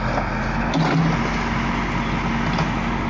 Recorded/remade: recorded